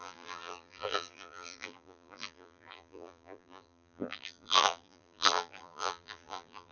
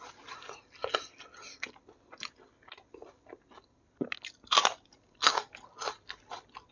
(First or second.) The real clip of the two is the second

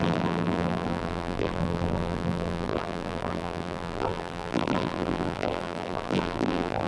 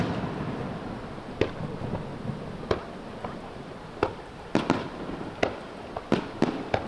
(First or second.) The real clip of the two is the second